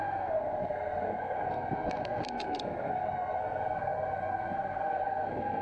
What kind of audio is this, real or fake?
fake